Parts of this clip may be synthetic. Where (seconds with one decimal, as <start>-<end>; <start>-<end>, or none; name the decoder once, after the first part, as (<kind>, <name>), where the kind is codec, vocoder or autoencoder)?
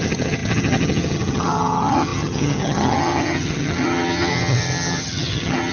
0.0-5.7 (vocoder, HiFi-GAN)